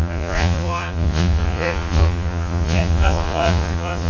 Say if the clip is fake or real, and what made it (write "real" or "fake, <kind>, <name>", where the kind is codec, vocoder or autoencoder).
fake, vocoder, Vocos